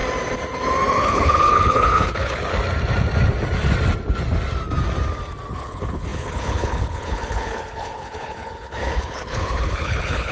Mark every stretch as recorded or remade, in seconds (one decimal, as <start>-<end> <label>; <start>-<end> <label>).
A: 0.0-0.9 recorded; 0.9-2.5 remade; 2.5-5.5 recorded; 5.5-10.3 remade